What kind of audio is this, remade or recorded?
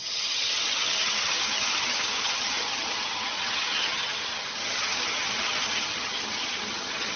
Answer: remade